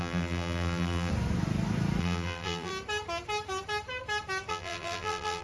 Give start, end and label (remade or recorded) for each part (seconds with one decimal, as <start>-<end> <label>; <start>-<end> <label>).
0.0-1.1 remade; 1.1-2.0 recorded; 2.0-2.7 remade; 2.7-4.5 recorded; 4.5-5.4 remade